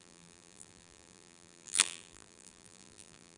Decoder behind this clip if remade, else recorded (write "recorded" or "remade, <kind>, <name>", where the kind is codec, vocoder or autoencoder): remade, vocoder, BigVGAN v2